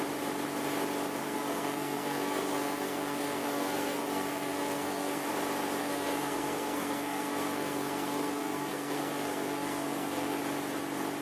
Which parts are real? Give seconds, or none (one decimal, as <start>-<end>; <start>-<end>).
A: 0.0-1.2; 5.3-5.8; 10.4-11.2